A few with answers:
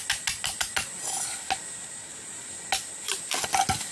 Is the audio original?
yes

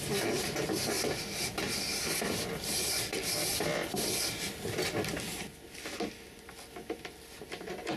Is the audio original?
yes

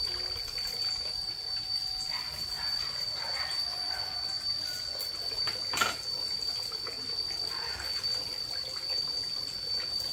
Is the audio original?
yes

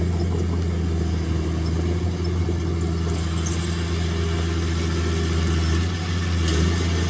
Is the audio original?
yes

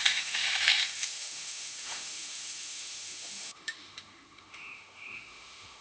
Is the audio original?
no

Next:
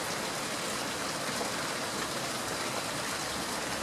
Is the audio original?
yes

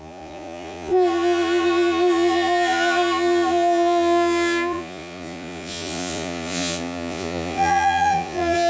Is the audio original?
no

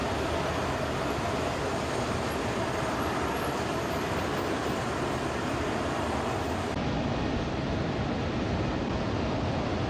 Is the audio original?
yes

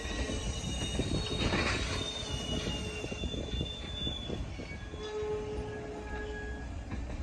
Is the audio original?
yes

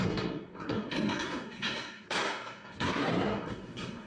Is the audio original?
no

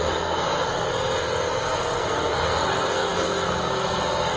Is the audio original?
no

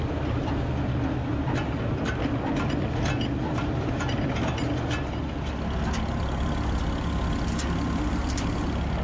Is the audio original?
yes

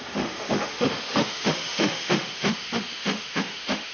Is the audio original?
no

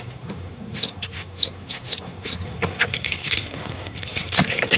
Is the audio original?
no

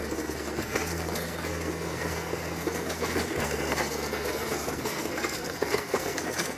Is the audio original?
no